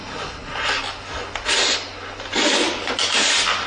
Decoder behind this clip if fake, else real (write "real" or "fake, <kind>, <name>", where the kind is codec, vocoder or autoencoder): real